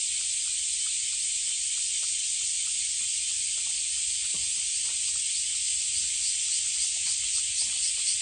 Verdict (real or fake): real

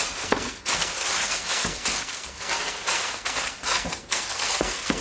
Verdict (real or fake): fake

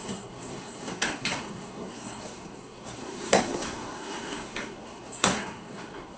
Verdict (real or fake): fake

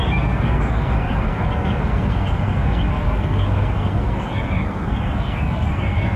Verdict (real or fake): fake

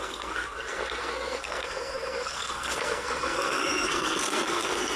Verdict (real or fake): fake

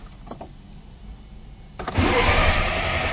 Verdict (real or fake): real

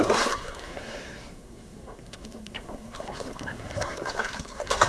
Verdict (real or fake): fake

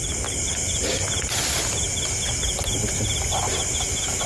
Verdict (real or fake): real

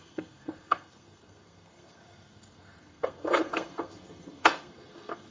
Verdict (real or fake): fake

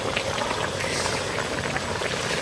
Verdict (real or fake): real